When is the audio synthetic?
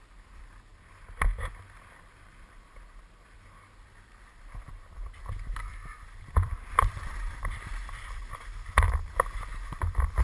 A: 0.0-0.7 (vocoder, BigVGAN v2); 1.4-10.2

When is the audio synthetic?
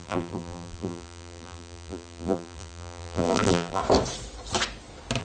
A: 0.0-3.8 (vocoder, BigVGAN v2)